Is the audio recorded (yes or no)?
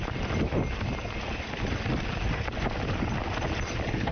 yes